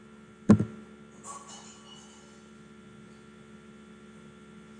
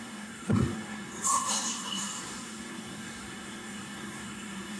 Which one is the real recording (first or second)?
first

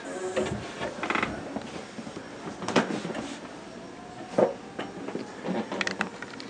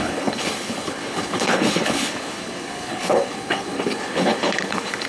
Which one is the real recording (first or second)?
first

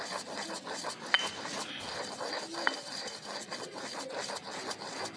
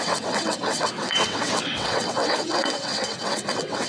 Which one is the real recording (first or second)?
first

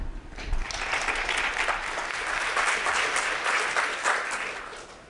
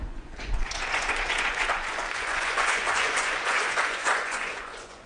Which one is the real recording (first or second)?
first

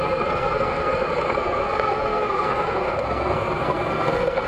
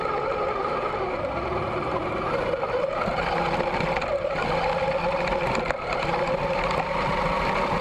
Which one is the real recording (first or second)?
second